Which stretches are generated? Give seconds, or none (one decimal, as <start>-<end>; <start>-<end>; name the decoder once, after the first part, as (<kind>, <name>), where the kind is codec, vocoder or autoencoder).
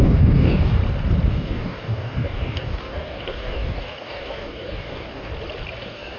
0.0-0.8 (codec, DAC); 1.3-5.3; 5.8-6.2